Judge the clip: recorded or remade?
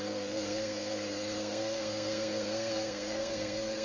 remade